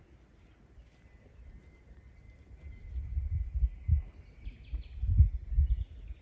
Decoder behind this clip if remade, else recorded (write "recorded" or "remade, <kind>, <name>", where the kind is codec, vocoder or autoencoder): recorded